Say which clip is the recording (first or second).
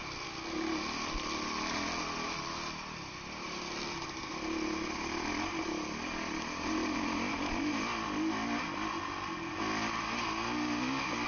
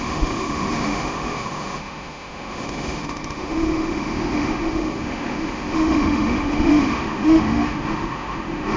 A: first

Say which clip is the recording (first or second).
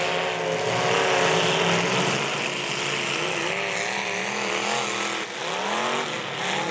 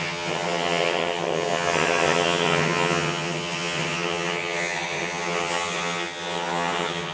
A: first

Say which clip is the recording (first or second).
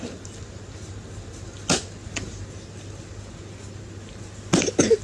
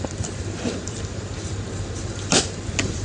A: first